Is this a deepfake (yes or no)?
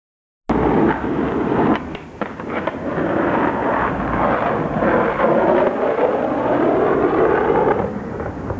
no